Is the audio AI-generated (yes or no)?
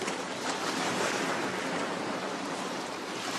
yes